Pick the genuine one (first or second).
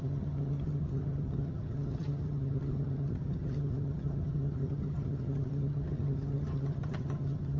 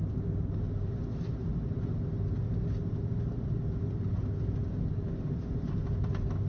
second